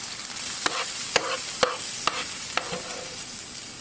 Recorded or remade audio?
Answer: recorded